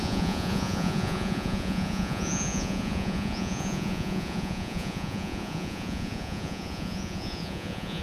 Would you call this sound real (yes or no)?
no